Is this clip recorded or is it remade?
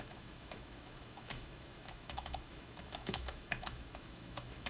remade